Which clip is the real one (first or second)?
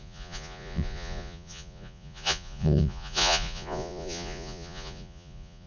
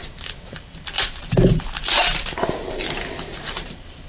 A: second